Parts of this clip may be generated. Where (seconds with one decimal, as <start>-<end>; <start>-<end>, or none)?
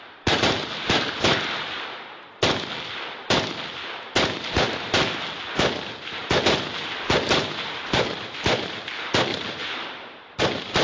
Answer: 9.3-10.4